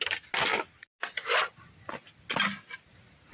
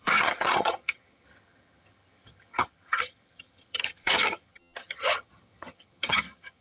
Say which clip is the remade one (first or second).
second